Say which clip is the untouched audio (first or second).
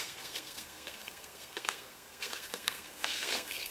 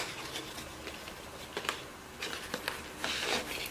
second